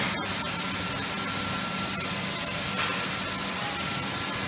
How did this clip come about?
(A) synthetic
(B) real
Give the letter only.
B